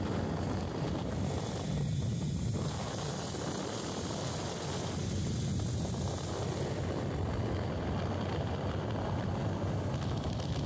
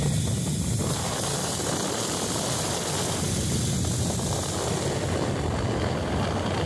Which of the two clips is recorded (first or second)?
first